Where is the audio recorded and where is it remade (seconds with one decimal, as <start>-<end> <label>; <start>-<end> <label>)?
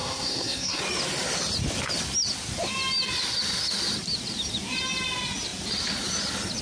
0.0-0.8 remade; 0.8-6.6 recorded